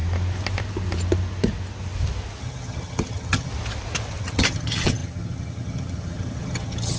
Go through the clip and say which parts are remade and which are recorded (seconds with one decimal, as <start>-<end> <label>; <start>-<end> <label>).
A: 0.0-2.4 recorded; 2.4-3.5 remade; 3.5-4.2 recorded; 4.2-7.0 remade